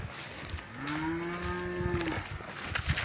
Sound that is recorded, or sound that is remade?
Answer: recorded